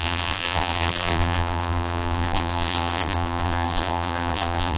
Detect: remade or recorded remade